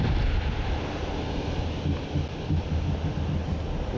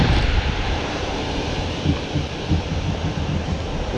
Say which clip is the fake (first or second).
second